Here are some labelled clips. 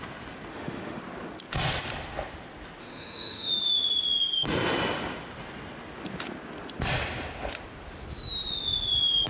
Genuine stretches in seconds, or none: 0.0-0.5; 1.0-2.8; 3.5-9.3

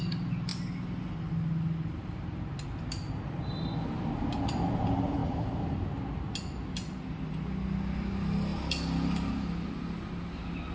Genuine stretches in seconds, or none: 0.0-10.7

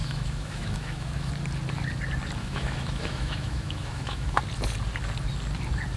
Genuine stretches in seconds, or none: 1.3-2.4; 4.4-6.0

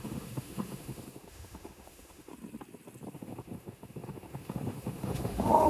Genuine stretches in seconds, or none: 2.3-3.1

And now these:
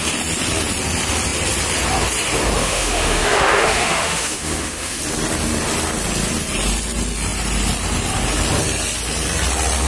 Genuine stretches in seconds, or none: 0.0-2.6; 5.0-9.9

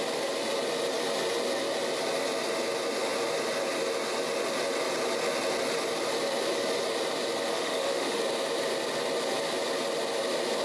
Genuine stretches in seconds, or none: 0.0-7.5; 8.2-10.6